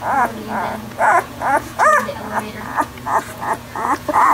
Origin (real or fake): fake